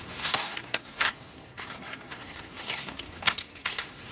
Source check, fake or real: fake